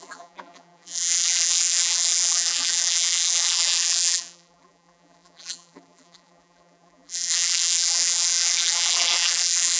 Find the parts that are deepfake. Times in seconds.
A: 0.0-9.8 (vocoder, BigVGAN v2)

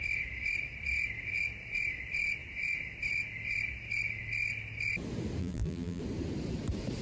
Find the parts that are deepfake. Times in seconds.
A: 5.4-6.0 (vocoder, BigVGAN v2)